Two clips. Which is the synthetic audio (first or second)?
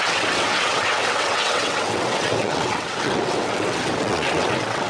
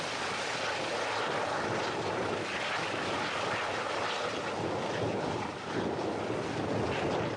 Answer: first